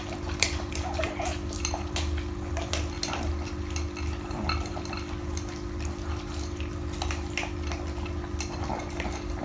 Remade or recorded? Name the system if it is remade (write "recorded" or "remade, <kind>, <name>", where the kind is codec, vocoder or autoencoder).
recorded